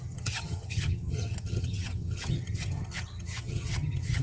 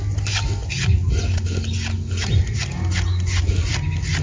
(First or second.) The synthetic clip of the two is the first